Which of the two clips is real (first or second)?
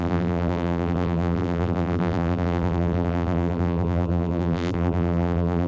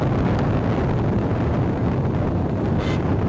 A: second